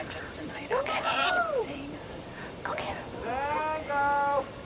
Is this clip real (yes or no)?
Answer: no